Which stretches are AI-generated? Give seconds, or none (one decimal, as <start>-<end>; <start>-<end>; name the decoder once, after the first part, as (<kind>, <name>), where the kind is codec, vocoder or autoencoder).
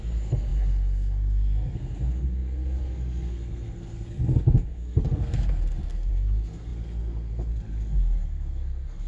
0.0-9.1 (codec, SNAC)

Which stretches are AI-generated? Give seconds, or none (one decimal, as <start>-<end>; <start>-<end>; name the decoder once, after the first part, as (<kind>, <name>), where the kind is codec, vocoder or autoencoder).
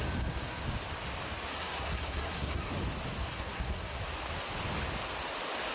1.5-2.7 (codec, SNAC); 3.3-4.0